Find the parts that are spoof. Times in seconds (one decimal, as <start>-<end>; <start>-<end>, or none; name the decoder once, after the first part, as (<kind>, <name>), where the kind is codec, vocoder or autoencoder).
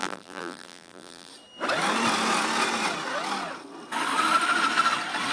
0.0-1.3 (vocoder, BigVGAN v2)